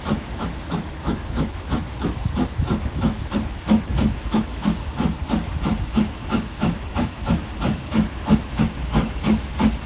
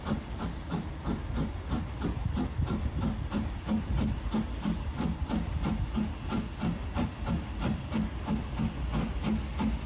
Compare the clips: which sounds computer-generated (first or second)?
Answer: first